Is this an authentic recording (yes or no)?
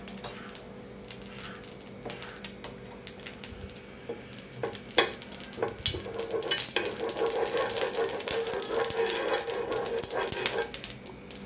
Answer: yes